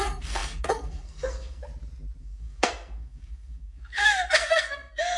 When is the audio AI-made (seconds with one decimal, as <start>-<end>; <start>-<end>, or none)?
0.0-1.6; 2.2-5.2